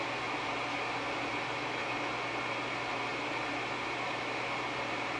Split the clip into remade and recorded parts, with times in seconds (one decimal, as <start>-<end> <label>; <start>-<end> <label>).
0.0-1.8 remade; 1.8-2.7 recorded; 2.7-5.2 remade